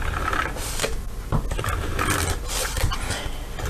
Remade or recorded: recorded